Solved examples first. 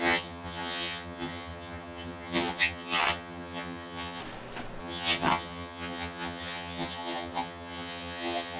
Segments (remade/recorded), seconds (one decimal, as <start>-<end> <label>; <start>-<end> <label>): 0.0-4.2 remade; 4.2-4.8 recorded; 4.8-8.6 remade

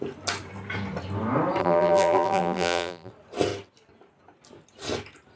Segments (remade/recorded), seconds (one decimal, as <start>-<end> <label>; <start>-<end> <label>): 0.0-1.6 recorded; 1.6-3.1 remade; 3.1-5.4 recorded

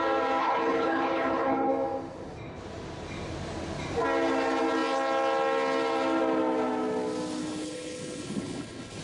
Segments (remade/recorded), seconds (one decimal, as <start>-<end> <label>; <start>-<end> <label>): 0.0-0.4 recorded; 0.4-1.7 remade; 1.7-7.4 recorded; 7.4-9.0 remade

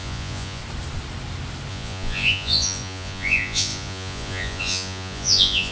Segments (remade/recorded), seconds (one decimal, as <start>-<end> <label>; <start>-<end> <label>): 0.0-0.6 remade; 0.6-1.7 recorded; 1.7-5.7 remade